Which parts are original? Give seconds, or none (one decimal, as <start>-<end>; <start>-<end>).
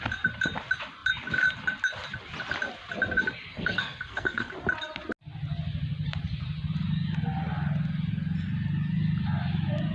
0.0-3.5; 4.5-9.9